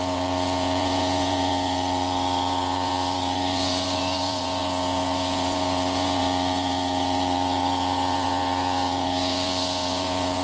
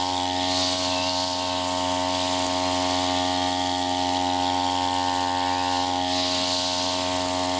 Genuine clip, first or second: second